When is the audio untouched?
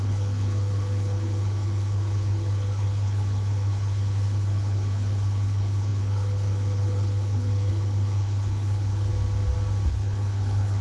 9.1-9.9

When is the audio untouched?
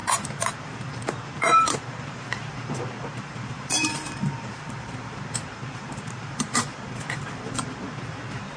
none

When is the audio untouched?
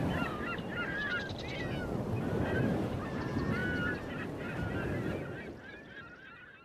0.0-6.6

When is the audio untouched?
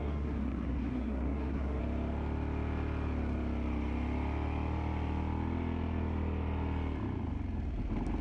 1.8-8.2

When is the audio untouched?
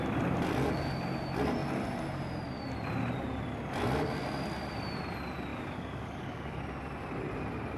0.0-5.5; 6.6-7.8